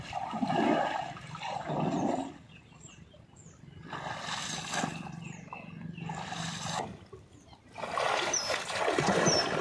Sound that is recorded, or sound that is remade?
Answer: recorded